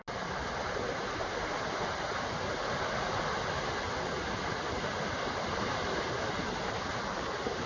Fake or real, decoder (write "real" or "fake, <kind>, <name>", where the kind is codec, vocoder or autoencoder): real